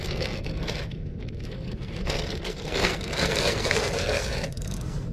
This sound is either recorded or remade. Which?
remade